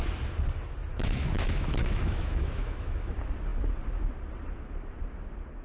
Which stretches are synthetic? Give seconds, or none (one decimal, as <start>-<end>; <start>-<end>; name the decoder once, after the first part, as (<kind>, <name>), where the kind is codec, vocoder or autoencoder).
0.9-3.1 (autoencoder, DAC-VAE)